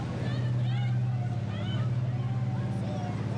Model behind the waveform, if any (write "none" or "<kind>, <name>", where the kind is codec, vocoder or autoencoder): none